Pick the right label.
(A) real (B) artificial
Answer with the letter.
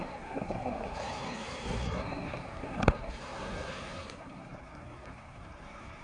B